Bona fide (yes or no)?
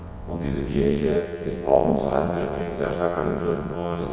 no